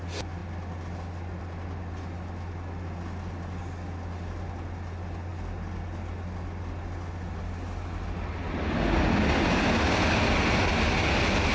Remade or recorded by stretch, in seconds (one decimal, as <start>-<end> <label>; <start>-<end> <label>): 0.0-11.5 recorded